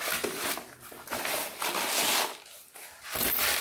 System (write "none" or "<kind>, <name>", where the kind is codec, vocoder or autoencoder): none